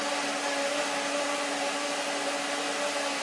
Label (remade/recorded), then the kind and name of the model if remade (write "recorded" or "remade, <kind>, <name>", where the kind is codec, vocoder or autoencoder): recorded